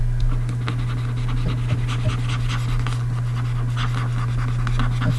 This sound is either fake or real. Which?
real